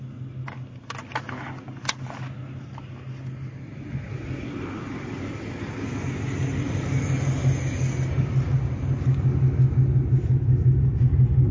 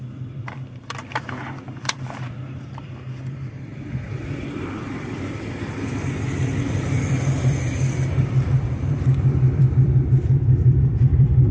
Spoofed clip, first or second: second